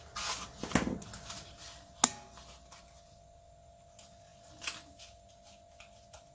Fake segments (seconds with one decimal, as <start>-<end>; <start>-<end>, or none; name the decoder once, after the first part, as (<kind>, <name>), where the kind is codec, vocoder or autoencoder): none